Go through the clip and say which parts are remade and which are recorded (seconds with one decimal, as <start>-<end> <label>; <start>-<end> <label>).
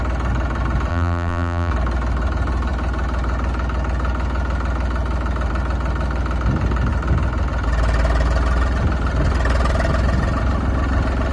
0.0-0.9 recorded; 0.9-1.7 remade; 1.7-11.3 recorded